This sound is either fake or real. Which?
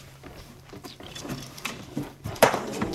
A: fake